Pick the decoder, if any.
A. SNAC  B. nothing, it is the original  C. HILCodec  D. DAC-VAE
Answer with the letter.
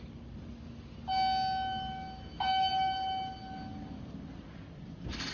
B